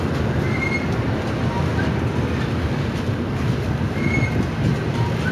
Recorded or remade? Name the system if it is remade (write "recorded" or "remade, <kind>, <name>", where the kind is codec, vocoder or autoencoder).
recorded